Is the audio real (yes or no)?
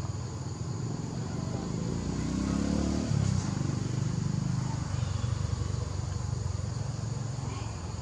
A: yes